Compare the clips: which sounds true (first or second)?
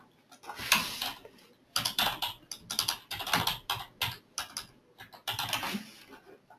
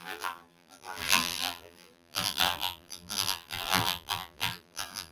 first